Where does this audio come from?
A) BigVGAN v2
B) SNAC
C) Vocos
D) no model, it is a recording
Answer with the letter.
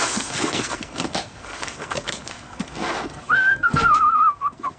B